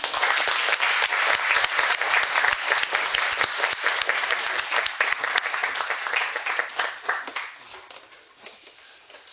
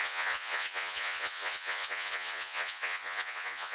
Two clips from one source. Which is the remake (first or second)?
second